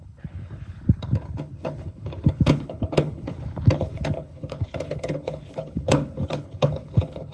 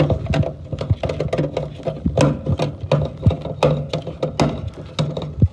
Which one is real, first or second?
second